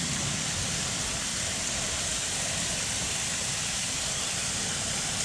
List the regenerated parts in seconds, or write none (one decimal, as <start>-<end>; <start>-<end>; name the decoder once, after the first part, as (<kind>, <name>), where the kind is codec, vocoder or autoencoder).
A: 0.0-5.2 (vocoder, BigVGAN v2)